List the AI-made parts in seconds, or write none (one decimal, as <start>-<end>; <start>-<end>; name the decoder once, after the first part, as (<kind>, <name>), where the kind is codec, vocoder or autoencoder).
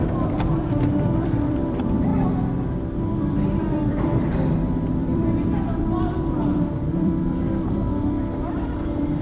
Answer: 0.0-2.1 (vocoder, BigVGAN v2); 3.1-9.2